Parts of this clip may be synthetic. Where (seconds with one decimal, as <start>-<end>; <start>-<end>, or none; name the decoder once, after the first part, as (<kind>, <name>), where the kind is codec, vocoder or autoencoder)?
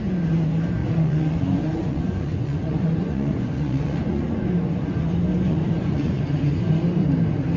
0.8-4.9 (vocoder, Vocos); 5.5-6.2